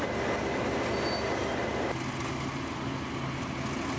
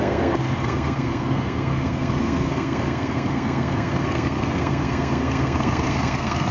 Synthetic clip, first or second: second